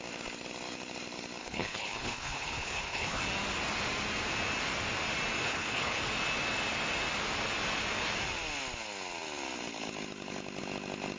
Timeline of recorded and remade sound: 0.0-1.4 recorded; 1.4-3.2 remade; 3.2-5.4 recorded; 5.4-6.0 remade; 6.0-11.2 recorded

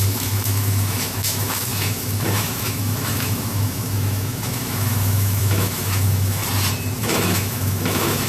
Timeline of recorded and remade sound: 0.0-6.4 remade; 6.4-7.0 recorded; 7.0-8.3 remade